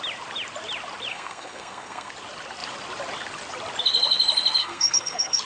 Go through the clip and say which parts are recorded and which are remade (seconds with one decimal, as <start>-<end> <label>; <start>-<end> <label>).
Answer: 0.0-1.1 recorded; 1.1-2.1 remade; 2.1-4.6 recorded; 4.6-5.4 remade

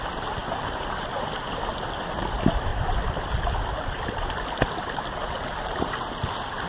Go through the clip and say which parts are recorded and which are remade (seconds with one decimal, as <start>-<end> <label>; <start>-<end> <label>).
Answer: 0.0-0.4 recorded; 0.4-1.2 remade; 1.2-2.7 recorded; 2.7-5.8 remade; 5.8-6.7 recorded

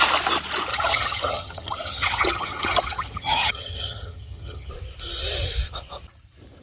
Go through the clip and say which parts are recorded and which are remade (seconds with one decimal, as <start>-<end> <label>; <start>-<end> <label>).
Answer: 0.0-0.7 recorded; 0.7-4.7 remade; 4.7-6.6 recorded

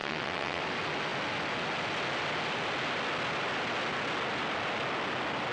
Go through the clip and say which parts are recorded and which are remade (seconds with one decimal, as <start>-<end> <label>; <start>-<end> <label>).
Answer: 0.0-0.6 remade; 0.6-5.5 recorded

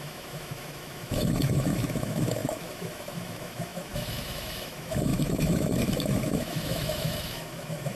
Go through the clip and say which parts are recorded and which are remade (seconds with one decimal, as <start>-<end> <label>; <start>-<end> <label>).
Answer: 0.0-8.0 remade

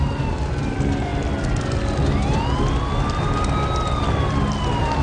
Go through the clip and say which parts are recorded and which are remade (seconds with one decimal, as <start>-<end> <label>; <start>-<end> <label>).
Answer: 0.0-5.0 recorded

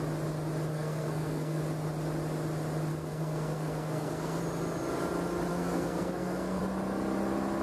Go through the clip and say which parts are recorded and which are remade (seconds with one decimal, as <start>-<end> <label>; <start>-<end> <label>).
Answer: 0.0-0.7 recorded; 0.7-1.6 remade; 1.6-2.9 recorded; 2.9-4.4 remade; 4.4-5.5 recorded; 5.5-6.6 remade; 6.6-7.6 recorded

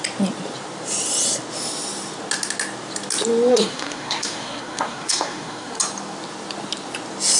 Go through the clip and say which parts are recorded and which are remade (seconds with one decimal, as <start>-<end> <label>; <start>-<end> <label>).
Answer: 0.0-3.5 recorded; 3.5-5.8 remade; 5.8-7.4 recorded